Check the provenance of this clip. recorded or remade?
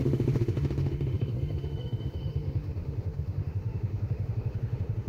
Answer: remade